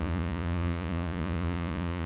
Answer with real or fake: fake